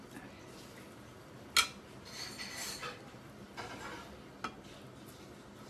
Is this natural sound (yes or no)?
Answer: yes